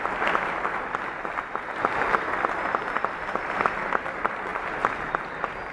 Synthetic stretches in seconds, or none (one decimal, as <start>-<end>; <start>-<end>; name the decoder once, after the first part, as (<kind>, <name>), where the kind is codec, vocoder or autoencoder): none